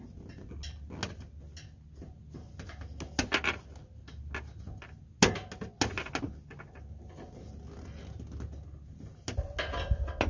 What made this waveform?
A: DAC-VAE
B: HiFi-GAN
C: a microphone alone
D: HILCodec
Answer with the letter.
C